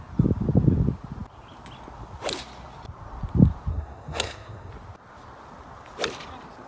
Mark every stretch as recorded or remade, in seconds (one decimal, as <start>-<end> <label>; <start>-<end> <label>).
0.0-3.7 recorded; 3.7-4.7 remade; 4.7-6.7 recorded